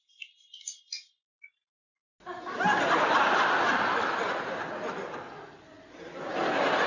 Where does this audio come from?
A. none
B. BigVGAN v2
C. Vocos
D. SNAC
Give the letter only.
A